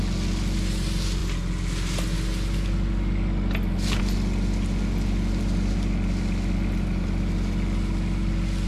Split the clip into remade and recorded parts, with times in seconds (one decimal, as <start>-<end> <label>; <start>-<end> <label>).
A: 0.0-8.7 recorded